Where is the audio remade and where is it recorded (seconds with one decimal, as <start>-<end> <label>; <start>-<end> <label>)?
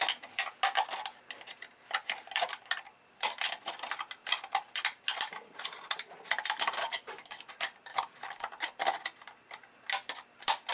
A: 0.0-6.8 recorded; 6.8-7.5 remade; 7.5-7.9 recorded; 7.9-8.5 remade; 8.5-10.7 recorded